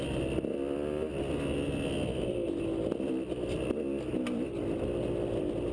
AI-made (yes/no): no